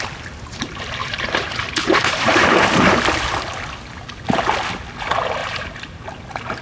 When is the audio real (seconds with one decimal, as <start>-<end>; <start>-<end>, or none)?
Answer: 0.0-1.0; 2.5-5.4; 6.1-6.6